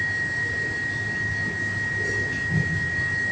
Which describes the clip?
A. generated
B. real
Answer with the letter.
B